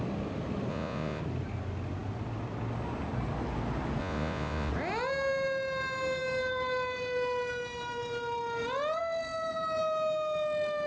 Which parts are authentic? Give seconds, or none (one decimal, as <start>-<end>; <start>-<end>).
0.0-0.7; 1.2-4.0; 4.7-10.9